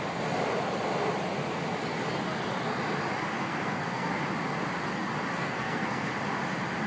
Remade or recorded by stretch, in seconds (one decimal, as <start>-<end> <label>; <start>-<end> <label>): 0.0-3.4 recorded; 3.4-4.1 remade; 4.1-5.3 recorded; 5.3-6.1 remade; 6.1-6.9 recorded